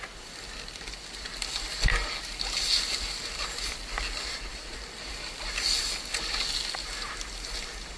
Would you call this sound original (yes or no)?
yes